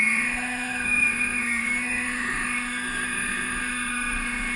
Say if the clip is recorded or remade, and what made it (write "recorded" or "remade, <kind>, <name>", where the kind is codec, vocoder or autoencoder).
remade, autoencoder, DAC-VAE